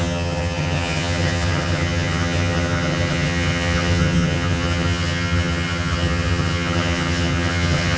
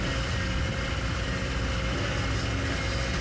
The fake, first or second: first